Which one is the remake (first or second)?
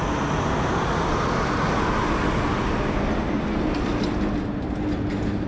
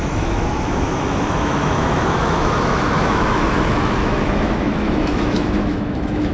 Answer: second